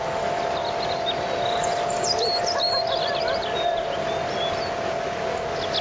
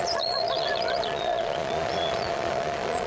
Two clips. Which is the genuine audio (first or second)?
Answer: first